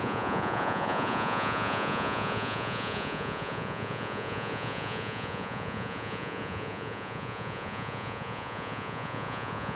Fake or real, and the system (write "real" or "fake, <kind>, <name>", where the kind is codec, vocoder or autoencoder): fake, vocoder, Vocos